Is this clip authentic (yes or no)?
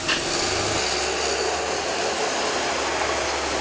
yes